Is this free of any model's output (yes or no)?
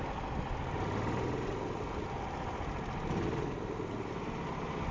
yes